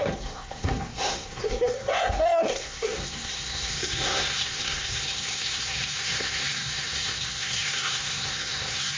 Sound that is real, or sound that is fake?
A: fake